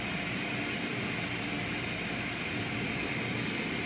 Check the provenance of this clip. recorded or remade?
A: recorded